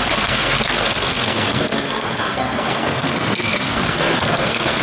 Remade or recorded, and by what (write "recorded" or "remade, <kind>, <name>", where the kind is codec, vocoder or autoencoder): remade, codec, SNAC